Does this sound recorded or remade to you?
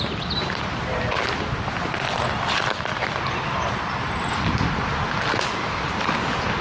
recorded